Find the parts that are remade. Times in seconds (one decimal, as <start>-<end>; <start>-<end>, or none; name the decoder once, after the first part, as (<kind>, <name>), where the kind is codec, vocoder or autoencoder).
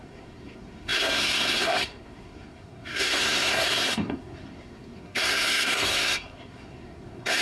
0.0-7.4 (codec, SNAC)